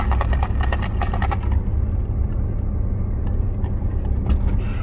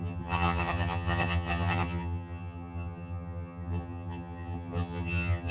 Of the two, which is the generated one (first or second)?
second